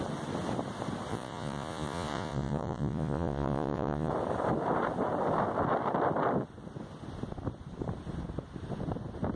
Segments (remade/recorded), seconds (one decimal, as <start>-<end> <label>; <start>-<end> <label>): 0.0-1.1 recorded; 1.1-4.1 remade; 4.1-9.4 recorded